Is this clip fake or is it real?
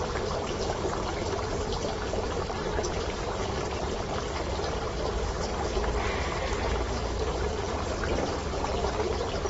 real